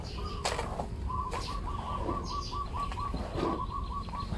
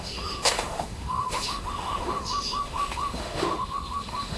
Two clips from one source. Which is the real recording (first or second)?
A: first